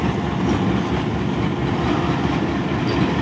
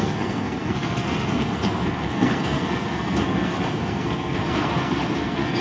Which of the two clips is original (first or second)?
first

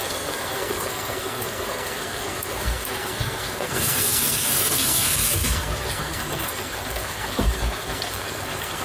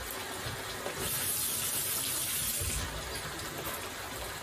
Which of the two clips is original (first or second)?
second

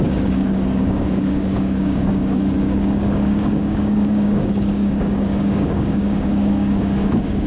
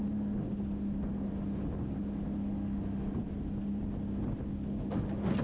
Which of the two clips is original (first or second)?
second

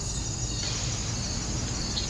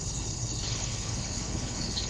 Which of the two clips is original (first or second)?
first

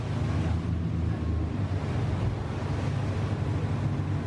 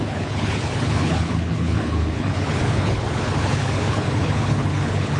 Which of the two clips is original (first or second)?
first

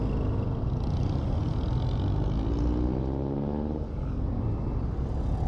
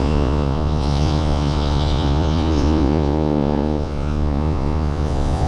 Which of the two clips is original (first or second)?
first